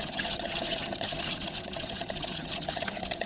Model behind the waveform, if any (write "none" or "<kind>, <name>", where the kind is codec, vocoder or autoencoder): vocoder, HiFi-GAN